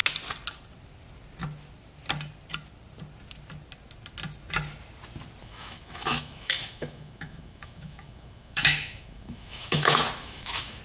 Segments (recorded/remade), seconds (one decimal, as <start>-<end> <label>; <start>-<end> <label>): 0.0-5.4 recorded; 5.4-10.8 remade